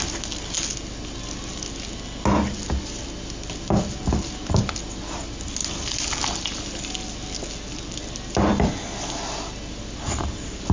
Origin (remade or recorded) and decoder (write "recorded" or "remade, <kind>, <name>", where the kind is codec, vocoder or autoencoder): recorded